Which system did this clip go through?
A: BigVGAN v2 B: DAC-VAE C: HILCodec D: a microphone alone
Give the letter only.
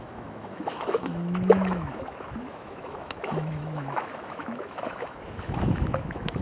B